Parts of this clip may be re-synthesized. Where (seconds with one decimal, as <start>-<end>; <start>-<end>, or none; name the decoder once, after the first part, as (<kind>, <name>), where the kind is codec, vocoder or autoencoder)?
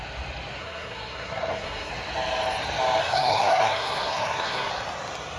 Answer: 0.6-1.9 (codec, SNAC); 3.0-4.7